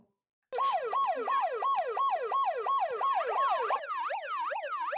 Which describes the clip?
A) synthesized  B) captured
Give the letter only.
B